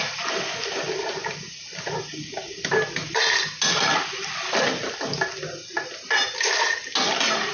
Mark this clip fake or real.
real